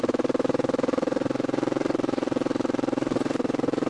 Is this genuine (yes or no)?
no